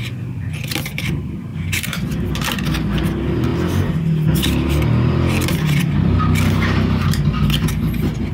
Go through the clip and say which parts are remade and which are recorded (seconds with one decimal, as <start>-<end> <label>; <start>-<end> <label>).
0.0-1.5 recorded; 1.5-2.3 remade; 2.3-8.3 recorded